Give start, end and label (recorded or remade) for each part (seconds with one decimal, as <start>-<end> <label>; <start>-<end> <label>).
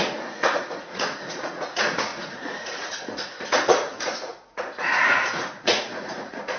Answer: 0.0-6.6 remade